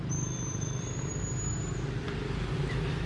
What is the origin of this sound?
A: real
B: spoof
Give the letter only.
A